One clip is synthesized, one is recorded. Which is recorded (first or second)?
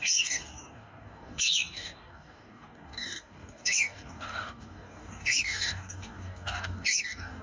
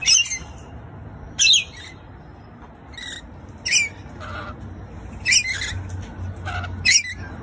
second